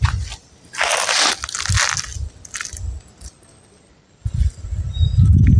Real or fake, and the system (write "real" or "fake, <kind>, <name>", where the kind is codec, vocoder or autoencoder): real